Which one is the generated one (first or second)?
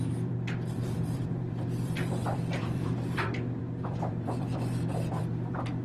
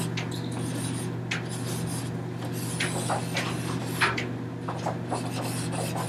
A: first